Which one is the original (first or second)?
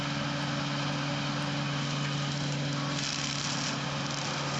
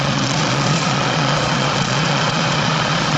first